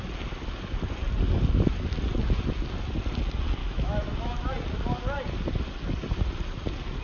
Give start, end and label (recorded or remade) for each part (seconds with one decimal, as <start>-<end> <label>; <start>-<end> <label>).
0.0-3.6 recorded; 3.6-4.5 remade; 4.5-7.0 recorded

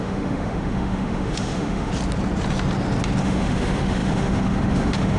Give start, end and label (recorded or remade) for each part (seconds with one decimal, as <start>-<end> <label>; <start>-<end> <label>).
0.0-1.9 remade; 1.9-3.2 recorded; 3.2-5.2 remade

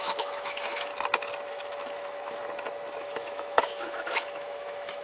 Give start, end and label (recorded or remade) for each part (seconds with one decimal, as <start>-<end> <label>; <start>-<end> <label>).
0.0-0.9 remade; 0.9-1.5 recorded; 1.5-2.4 remade; 2.4-3.0 recorded; 3.0-5.0 remade

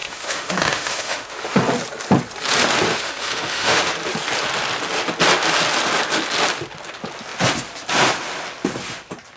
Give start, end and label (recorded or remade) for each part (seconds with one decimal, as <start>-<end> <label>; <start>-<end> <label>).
0.0-1.6 remade; 1.6-2.9 recorded; 2.9-3.8 remade; 3.8-9.4 recorded